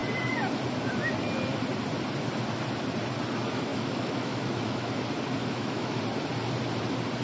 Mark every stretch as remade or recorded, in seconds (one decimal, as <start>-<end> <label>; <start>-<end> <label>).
0.0-3.7 recorded; 3.7-4.9 remade; 4.9-5.4 recorded; 5.4-6.0 remade; 6.0-7.2 recorded